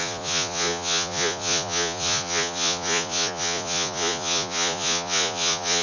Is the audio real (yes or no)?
no